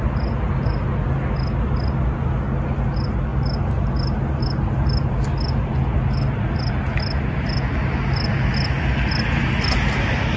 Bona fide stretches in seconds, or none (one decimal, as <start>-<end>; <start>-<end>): 0.0-10.4